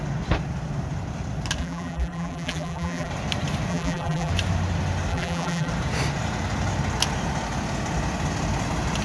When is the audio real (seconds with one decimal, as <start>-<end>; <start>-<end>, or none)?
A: 0.0-1.6; 3.1-3.7; 4.3-5.1; 5.7-9.0